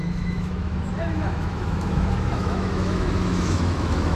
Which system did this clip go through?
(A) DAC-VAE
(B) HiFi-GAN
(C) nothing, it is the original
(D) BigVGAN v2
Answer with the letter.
A